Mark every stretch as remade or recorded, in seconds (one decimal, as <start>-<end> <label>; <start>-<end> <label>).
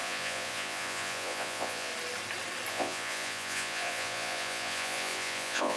0.0-1.9 remade; 1.9-2.7 recorded; 2.7-5.8 remade